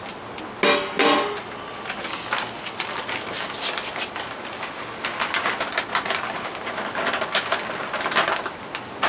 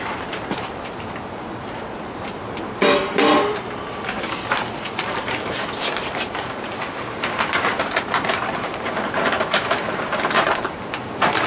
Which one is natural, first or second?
first